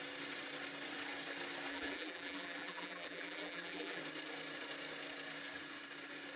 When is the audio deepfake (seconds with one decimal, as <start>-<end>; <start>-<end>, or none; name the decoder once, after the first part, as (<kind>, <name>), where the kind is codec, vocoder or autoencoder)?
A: 1.7-4.0 (vocoder, BigVGAN v2)